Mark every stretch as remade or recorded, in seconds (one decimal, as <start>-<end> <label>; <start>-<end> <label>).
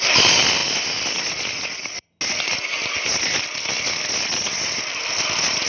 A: 0.0-5.7 recorded